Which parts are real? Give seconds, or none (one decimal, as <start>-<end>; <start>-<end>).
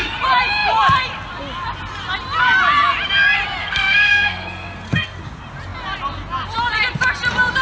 0.0-3.6; 5.2-7.6